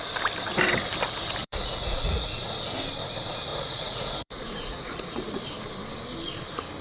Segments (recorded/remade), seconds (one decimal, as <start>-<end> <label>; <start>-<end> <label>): 0.0-1.4 recorded; 1.4-2.4 remade; 2.4-3.5 recorded; 3.5-5.3 remade; 5.3-6.8 recorded